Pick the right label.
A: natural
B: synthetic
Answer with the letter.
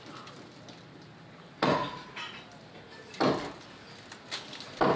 A